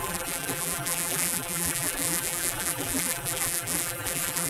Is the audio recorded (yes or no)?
no